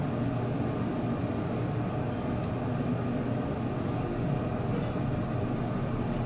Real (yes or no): yes